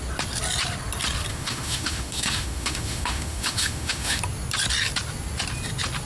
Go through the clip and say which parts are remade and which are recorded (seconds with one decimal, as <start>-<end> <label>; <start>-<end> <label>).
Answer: 0.0-1.3 recorded; 1.3-4.2 remade; 4.2-6.1 recorded